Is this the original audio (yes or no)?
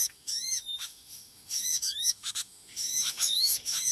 no